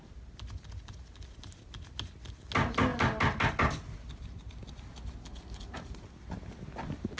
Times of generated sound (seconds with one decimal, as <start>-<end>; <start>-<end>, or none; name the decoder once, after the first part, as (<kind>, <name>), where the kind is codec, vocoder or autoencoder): none